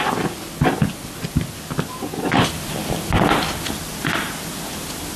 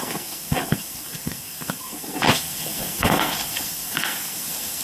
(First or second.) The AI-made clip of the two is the second